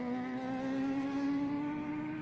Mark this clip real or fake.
real